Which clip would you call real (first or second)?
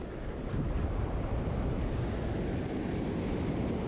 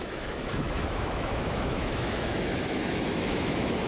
first